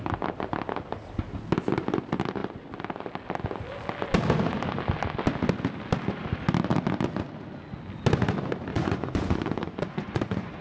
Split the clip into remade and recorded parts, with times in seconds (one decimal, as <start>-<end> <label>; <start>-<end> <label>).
0.0-8.7 recorded; 8.7-10.6 remade